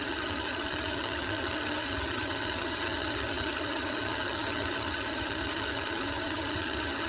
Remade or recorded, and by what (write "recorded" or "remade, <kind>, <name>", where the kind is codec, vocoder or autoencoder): remade, vocoder, HiFi-GAN